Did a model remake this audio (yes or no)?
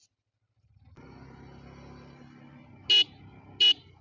no